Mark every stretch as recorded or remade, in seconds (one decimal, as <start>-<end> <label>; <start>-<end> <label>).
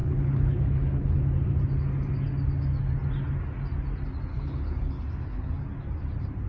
0.0-1.2 remade; 1.2-4.3 recorded; 4.3-5.6 remade; 5.6-6.5 recorded